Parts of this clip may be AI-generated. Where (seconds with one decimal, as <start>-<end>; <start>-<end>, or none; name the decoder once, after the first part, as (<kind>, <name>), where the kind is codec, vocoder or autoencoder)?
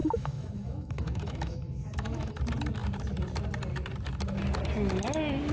0.0-2.3 (autoencoder, DAC-VAE)